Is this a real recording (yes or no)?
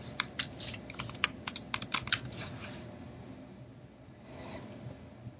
yes